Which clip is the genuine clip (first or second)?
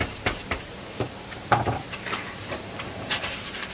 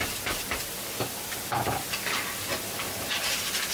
second